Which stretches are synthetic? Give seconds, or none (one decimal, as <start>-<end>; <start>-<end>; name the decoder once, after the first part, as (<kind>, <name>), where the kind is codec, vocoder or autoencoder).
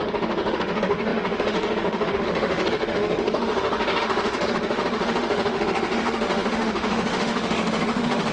0.0-8.3 (autoencoder, DAC-VAE)